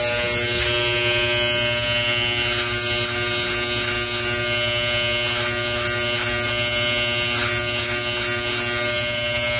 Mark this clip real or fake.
real